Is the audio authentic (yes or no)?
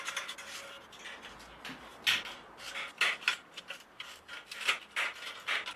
yes